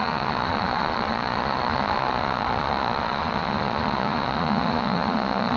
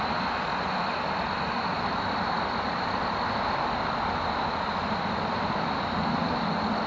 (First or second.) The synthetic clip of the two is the first